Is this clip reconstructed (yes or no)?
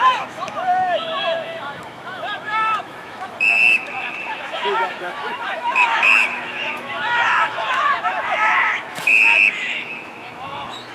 yes